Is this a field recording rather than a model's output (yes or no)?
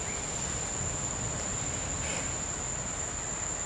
yes